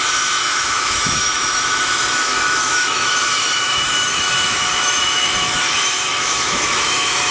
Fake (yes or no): yes